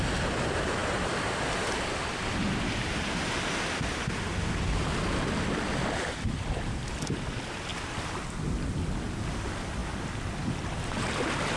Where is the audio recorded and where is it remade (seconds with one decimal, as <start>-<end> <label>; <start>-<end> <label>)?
0.0-11.6 recorded

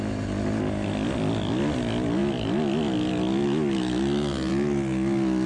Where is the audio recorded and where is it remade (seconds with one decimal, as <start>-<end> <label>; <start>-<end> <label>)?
0.0-5.5 recorded

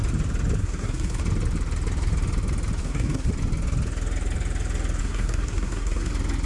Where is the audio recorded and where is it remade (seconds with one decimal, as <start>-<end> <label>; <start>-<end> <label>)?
0.0-0.6 recorded; 0.6-1.2 remade; 1.2-2.8 recorded; 2.8-3.3 remade; 3.3-5.0 recorded; 5.0-6.1 remade; 6.1-6.5 recorded

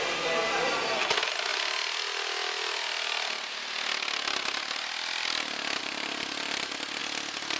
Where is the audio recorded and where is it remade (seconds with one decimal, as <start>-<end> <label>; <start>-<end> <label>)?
0.0-7.6 recorded

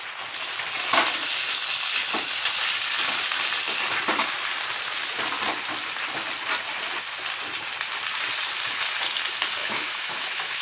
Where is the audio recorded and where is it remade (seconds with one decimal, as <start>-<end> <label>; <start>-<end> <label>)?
0.0-9.6 recorded; 9.6-10.6 remade